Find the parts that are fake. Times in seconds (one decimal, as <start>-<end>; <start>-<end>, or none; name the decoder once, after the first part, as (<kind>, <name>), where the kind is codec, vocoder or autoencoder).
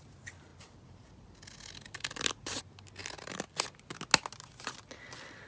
0.5-2.6 (vocoder, BigVGAN v2)